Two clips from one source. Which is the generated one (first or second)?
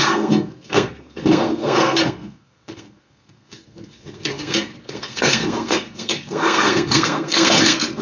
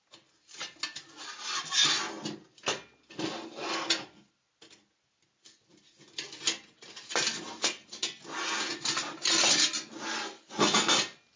first